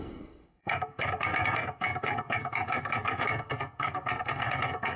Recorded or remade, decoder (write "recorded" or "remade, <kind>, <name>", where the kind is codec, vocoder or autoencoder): remade, codec, SNAC